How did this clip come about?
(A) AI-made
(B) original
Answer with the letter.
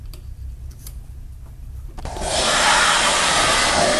B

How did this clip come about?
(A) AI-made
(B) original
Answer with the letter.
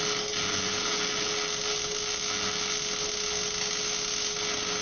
B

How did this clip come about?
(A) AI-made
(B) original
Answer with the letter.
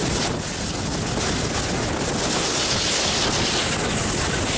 B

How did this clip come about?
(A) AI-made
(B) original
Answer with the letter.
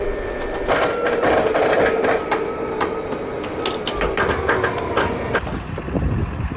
B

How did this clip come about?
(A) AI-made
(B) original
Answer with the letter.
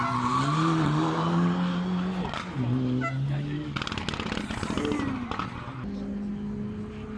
B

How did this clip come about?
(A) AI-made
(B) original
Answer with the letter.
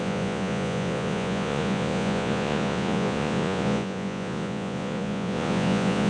A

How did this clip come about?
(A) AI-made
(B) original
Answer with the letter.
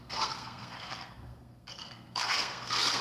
A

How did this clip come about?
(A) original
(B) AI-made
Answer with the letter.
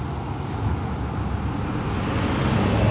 A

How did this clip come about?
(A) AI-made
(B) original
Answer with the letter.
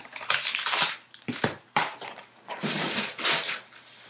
A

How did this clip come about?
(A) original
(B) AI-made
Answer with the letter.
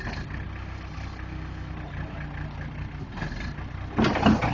A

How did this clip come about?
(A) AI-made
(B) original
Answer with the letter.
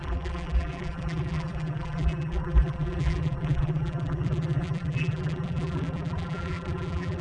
A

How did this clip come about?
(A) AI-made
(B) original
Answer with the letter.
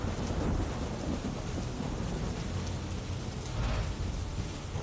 B